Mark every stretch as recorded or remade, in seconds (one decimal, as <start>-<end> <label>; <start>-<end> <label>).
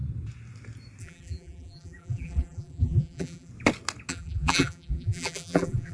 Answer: 0.0-1.0 recorded; 1.0-3.5 remade; 3.5-4.1 recorded; 4.1-5.9 remade